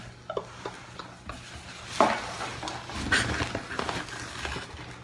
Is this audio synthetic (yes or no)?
no